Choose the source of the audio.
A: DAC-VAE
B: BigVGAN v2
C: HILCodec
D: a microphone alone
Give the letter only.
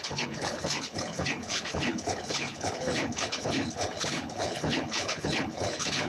C